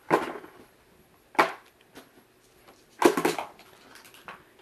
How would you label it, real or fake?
real